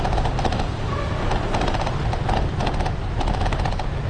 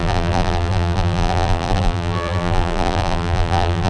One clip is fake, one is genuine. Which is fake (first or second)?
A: second